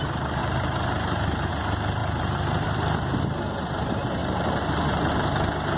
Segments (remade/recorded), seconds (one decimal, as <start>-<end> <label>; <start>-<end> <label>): 0.0-0.4 recorded; 0.4-1.5 remade; 1.5-2.0 recorded; 2.0-3.4 remade; 3.4-4.2 recorded; 4.2-5.1 remade; 5.1-5.8 recorded